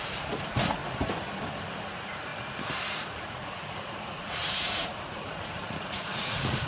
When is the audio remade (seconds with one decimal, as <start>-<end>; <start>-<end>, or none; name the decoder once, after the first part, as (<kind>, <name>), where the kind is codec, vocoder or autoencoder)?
0.0-0.8 (vocoder, Vocos); 1.9-2.3; 2.8-6.7

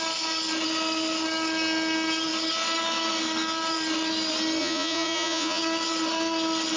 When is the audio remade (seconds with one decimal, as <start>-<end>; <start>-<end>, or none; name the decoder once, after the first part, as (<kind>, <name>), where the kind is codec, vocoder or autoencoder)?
4.6-5.6 (vocoder, Vocos)

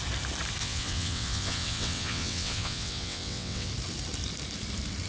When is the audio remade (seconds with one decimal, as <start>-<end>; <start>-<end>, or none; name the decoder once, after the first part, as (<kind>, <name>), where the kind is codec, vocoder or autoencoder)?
0.6-3.7 (vocoder, WaveNeXt)

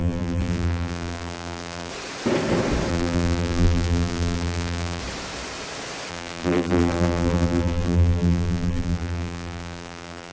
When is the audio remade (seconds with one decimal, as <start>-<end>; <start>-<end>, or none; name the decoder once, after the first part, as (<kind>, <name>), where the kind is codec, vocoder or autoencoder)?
0.0-1.9 (vocoder, BigVGAN v2); 2.9-5.0; 6.1-10.3

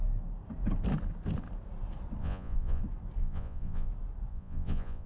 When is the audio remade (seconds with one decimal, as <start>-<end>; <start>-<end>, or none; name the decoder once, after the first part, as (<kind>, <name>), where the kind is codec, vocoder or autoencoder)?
2.2-2.8 (vocoder, Vocos); 3.2-3.9; 4.3-5.1

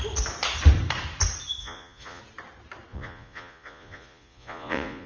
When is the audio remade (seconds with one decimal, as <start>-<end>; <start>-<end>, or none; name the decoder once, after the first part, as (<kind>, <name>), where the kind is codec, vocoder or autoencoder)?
1.6-2.2 (vocoder, Vocos); 2.9-5.1

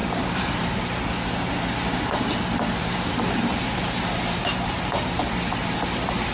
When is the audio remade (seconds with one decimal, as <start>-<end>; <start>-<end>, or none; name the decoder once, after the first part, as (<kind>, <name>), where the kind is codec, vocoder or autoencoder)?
0.0-1.0 (vocoder, BigVGAN v2); 2.8-5.3

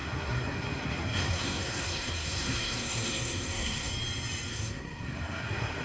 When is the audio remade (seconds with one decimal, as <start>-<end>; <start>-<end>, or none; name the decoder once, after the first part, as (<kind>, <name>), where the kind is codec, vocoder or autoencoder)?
0.0-3.9 (codec, SNAC); 4.5-5.8